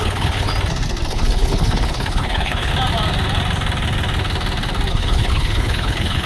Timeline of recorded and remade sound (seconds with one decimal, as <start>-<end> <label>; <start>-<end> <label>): 0.0-0.5 remade; 0.5-1.1 recorded; 1.1-2.7 remade; 2.7-4.9 recorded; 4.9-6.3 remade